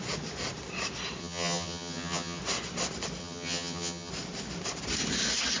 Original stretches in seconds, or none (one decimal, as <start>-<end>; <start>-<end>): 0.0-1.2; 2.4-3.2; 4.1-5.6